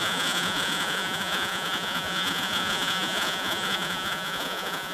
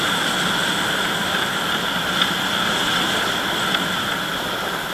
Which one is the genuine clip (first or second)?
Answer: second